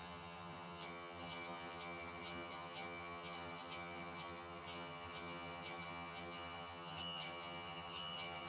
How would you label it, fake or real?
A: fake